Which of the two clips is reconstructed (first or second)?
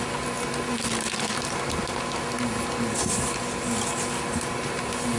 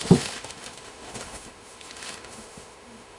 second